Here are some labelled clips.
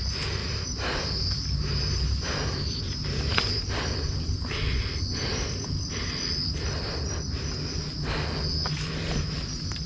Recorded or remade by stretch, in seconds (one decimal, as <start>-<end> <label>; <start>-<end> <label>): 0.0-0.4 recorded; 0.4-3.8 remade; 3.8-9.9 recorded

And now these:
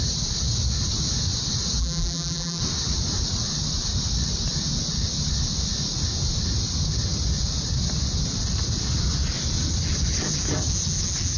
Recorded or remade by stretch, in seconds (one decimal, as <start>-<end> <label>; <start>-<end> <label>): 0.0-1.8 recorded; 1.8-2.6 remade; 2.6-11.4 recorded

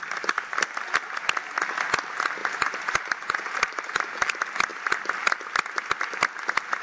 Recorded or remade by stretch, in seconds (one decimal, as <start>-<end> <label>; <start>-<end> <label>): 0.0-2.4 recorded; 2.4-4.3 remade; 4.3-6.8 recorded